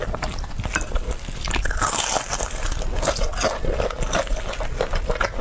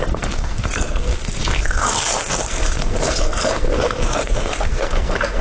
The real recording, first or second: first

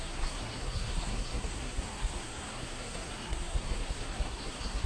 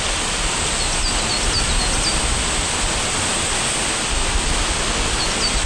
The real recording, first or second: second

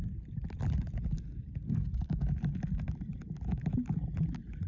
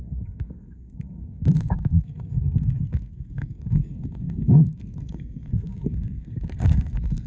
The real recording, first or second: first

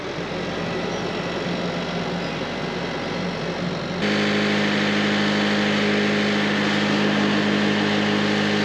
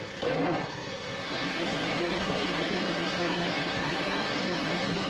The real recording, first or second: first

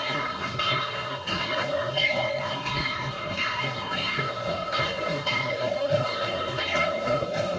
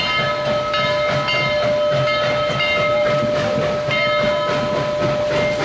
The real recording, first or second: second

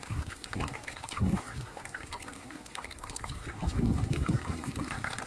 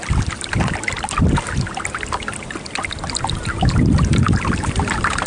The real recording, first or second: second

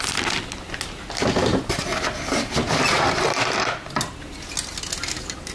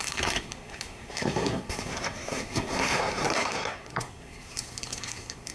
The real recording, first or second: first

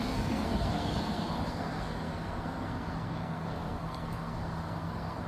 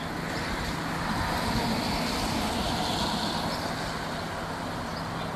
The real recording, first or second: second